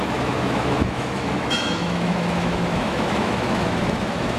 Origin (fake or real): fake